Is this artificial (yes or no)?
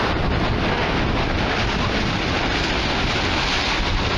no